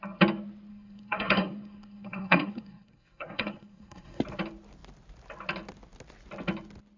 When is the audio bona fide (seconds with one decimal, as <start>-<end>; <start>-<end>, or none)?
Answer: 0.0-0.7; 4.2-7.0